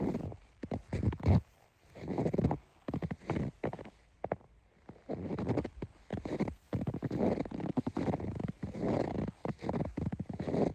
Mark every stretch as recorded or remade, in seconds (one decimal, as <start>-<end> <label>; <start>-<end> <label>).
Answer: 0.0-10.7 recorded